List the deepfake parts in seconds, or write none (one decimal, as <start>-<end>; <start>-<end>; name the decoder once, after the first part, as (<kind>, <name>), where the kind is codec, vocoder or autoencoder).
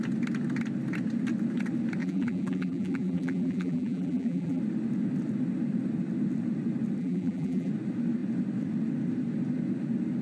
2.0-4.6 (vocoder, BigVGAN v2); 7.0-7.7